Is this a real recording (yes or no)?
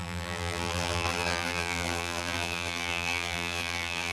no